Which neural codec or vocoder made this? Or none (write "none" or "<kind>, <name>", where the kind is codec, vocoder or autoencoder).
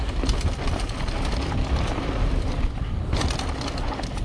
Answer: none